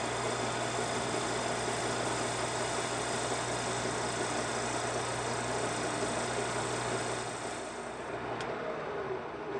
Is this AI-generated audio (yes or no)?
no